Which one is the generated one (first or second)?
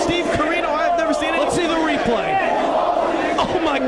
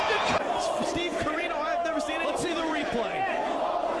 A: second